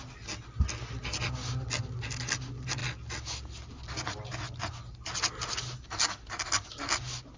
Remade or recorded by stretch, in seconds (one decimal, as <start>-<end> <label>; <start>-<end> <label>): 0.0-7.4 recorded